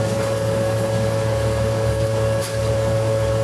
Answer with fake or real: fake